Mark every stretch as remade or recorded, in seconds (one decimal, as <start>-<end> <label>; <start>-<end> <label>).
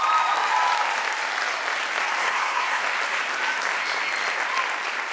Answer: 0.0-2.2 recorded; 2.2-2.8 remade; 2.8-5.1 recorded